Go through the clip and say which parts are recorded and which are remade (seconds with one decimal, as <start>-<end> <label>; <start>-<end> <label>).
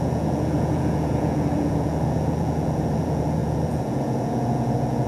0.0-5.1 remade